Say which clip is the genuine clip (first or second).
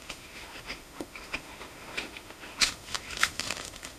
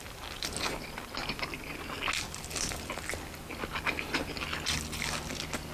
second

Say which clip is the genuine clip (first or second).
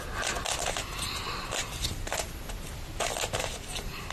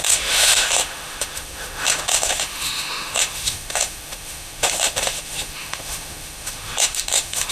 first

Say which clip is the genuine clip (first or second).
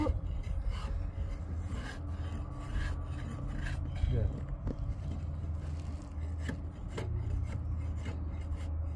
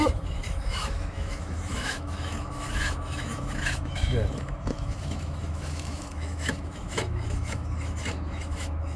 first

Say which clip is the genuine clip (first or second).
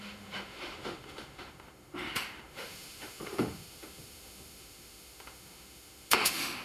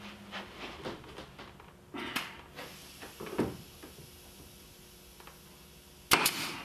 second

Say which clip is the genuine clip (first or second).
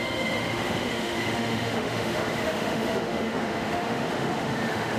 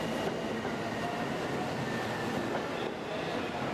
second